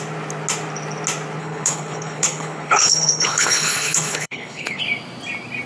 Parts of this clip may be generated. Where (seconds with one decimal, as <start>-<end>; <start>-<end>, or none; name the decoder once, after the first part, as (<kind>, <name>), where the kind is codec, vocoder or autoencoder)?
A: 1.4-4.8 (codec, HILCodec)